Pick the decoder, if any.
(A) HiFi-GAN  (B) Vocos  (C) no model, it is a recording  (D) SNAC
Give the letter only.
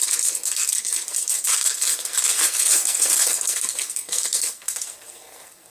D